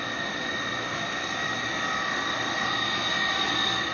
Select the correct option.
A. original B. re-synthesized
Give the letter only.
A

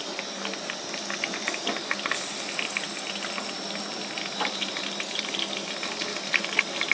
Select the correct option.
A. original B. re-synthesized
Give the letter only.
A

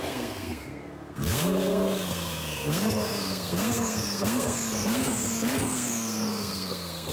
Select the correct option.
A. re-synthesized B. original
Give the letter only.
A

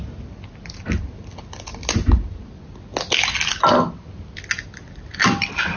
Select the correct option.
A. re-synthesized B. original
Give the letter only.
B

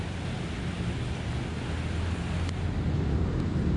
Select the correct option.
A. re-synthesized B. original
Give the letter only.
B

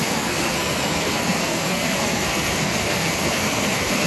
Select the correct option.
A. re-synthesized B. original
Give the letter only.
A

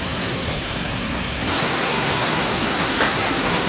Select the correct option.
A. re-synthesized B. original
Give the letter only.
A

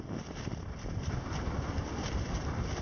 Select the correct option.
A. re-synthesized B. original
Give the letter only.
B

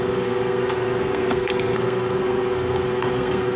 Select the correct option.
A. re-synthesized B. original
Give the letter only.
A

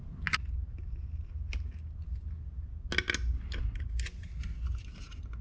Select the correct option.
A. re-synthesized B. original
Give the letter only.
B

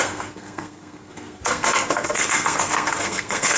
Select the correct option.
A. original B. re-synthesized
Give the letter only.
B